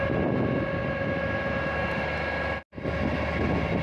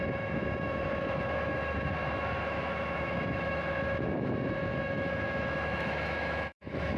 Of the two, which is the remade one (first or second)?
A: second